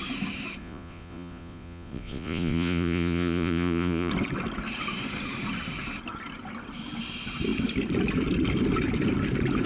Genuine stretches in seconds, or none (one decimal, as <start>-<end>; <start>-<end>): 0.0-0.6; 4.1-9.7